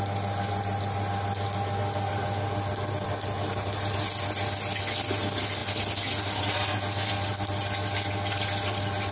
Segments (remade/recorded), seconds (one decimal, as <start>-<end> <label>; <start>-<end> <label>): 0.0-9.1 recorded